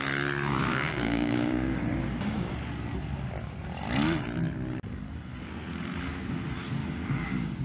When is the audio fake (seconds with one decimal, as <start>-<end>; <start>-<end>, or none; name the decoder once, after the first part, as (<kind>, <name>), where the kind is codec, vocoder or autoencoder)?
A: 0.7-2.5 (codec, DAC); 6.8-7.6